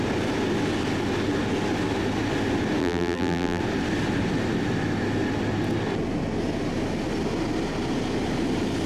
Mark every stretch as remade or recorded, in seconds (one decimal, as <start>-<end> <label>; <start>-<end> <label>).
0.0-2.8 recorded; 2.8-3.6 remade; 3.6-8.9 recorded